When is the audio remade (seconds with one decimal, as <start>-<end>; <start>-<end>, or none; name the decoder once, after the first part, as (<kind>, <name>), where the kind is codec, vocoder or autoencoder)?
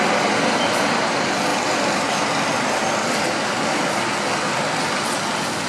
1.5-4.3 (vocoder, BigVGAN v2)